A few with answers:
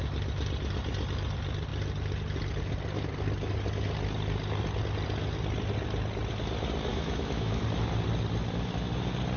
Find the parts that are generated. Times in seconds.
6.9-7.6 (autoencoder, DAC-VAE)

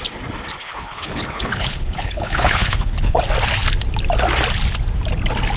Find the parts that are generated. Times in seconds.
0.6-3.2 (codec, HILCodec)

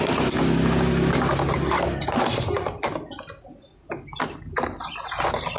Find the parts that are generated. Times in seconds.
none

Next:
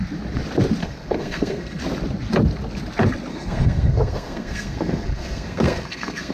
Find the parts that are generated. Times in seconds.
0.8-1.8 (codec, SNAC); 3.3-6.3

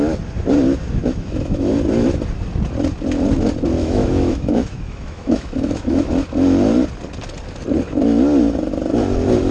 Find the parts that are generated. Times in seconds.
1.0-1.7 (autoencoder, DAC-VAE); 3.8-6.1

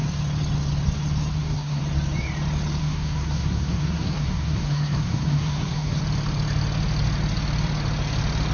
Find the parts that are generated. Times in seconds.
1.3-1.8 (codec, SNAC); 2.8-6.0